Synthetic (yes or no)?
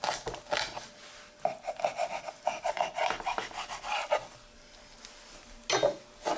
no